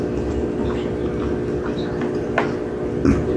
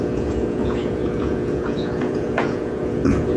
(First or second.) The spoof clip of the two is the second